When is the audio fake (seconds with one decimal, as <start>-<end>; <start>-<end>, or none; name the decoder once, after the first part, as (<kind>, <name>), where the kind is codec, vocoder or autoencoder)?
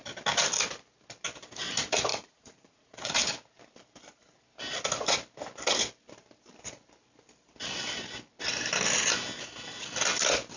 2.1-3.1 (vocoder, Vocos)